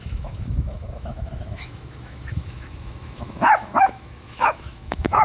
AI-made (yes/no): yes